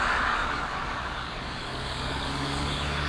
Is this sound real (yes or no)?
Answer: no